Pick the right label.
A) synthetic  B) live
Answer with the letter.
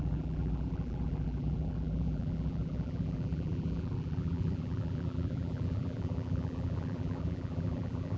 A